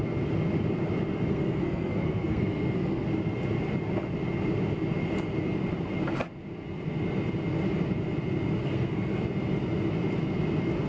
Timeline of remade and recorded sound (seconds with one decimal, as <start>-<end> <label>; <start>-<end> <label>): 0.0-1.3 recorded; 1.3-3.0 remade; 3.0-8.6 recorded; 8.6-9.2 remade; 9.2-10.9 recorded